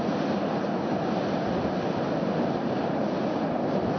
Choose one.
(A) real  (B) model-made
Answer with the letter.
A